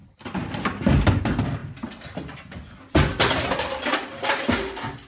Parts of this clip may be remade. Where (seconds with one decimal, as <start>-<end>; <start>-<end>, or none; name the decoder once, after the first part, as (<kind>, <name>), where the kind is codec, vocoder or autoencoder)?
none